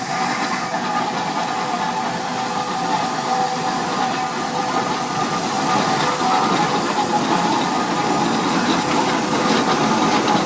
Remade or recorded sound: recorded